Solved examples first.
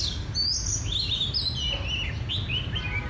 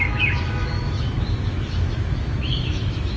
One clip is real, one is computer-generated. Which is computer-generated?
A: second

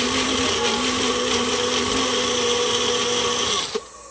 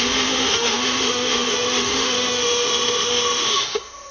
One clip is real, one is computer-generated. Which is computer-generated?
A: second